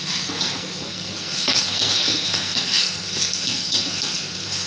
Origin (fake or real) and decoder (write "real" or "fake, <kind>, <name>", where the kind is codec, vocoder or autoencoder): fake, codec, SNAC